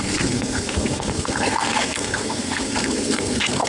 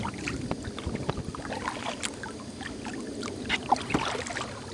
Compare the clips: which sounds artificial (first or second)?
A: first